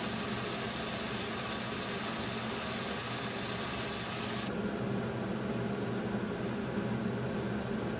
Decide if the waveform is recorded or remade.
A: recorded